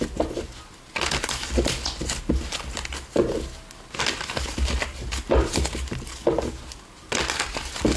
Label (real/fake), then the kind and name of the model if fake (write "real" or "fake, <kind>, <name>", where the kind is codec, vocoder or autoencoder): real